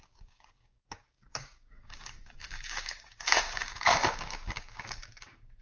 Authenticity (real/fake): fake